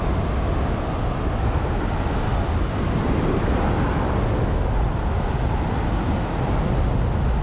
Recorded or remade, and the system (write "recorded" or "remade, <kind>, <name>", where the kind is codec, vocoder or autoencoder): recorded